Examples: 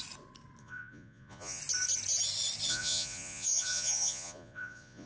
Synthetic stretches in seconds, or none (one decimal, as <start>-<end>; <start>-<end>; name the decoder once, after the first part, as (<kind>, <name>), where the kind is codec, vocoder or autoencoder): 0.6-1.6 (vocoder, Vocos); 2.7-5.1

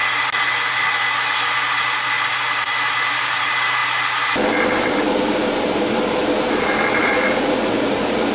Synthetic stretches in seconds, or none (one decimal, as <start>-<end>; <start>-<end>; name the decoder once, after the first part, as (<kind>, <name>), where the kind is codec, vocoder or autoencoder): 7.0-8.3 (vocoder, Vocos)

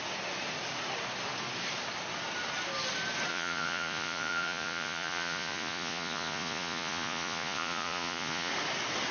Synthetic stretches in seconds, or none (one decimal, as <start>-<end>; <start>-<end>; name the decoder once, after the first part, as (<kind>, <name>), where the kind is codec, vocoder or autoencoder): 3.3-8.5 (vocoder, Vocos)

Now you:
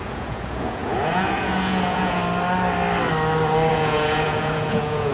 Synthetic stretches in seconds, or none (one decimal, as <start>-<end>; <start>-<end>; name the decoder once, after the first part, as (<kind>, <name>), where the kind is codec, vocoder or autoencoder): 0.0-2.2 (vocoder, Vocos); 3.7-5.1

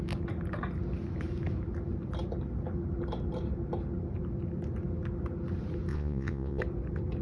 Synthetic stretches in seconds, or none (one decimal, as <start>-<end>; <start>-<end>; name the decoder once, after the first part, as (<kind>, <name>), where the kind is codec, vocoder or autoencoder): 5.9-6.6 (vocoder, Vocos)

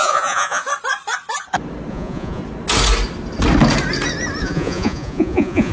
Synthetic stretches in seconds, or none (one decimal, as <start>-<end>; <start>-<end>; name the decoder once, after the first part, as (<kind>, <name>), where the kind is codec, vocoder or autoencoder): 0.0-0.6 (vocoder, Vocos); 1.9-2.4; 4.4-5.7